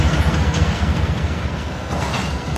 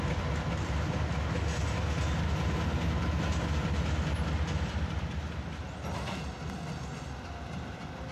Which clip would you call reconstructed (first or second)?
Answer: first